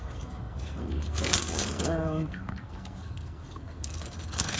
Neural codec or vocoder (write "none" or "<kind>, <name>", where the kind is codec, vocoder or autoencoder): codec, SNAC